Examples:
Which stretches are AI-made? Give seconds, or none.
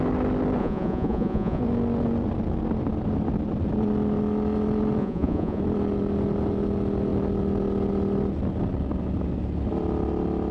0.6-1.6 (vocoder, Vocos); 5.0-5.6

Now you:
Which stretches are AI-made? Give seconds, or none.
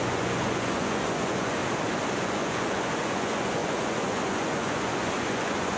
0.0-1.6 (vocoder, Vocos); 2.2-5.8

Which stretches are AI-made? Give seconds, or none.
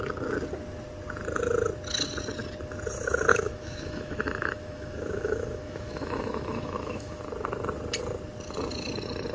3.3-7.2 (autoencoder, DAC-VAE)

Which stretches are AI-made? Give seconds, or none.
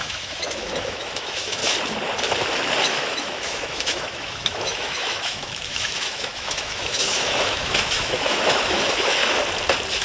0.0-1.6 (autoencoder, DAC-VAE); 2.8-9.2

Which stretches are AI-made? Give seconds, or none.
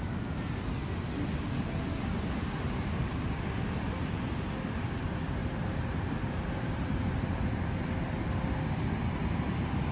5.4-7.9 (vocoder, BigVGAN v2)